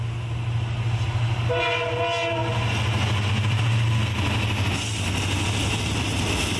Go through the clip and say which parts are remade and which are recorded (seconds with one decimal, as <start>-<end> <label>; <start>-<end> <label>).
0.0-6.6 recorded